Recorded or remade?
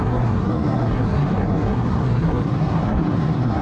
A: remade